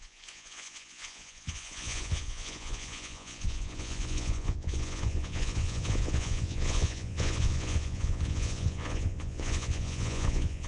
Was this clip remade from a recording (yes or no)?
yes